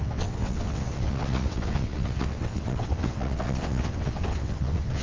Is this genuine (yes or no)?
no